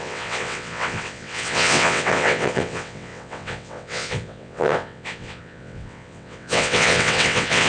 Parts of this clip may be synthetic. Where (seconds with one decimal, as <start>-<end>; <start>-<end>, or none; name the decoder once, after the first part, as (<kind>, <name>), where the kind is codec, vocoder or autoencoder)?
0.0-7.7 (vocoder, WaveNeXt)